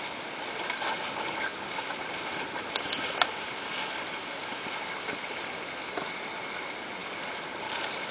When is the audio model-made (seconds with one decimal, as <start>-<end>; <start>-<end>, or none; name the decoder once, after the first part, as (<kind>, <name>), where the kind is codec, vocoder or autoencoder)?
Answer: 1.5-3.5 (vocoder, BigVGAN v2); 7.0-8.1